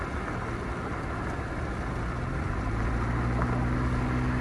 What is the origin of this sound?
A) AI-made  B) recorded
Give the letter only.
B